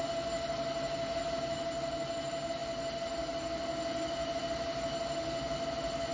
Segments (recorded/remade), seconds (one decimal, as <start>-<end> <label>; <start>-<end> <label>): 0.0-6.1 recorded